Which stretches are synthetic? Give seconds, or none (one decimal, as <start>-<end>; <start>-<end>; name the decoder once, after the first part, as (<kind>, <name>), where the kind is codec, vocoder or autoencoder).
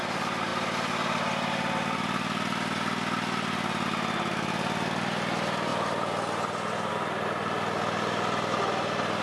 none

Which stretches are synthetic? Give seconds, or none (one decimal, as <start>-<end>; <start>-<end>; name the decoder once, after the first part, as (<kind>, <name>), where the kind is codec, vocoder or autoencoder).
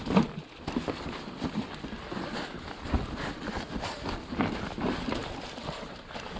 5.2-6.4 (vocoder, BigVGAN v2)